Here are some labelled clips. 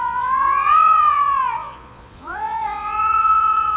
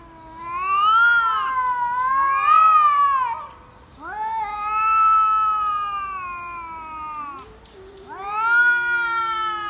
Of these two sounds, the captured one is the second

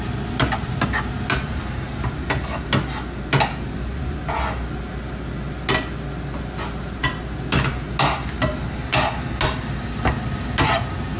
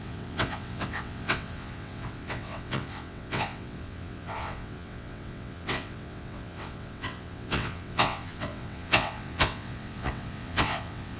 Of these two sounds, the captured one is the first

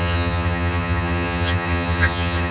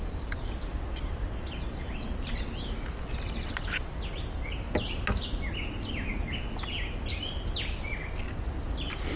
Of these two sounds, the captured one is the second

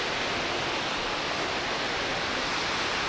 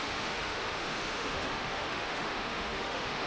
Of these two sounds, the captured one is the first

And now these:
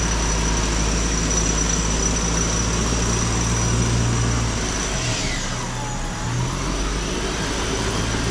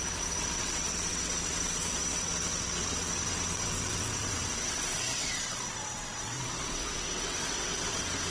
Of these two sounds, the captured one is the first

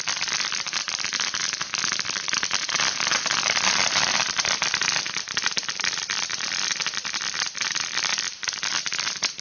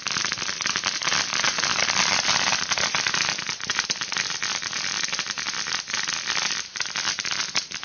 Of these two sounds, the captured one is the second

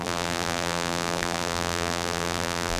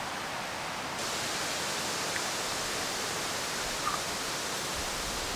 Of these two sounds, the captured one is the second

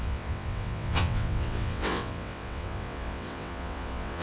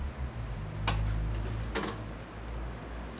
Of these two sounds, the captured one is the second